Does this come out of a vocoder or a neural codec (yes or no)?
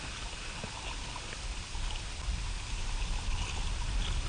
no